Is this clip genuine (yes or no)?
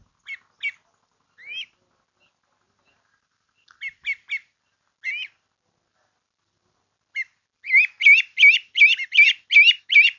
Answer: yes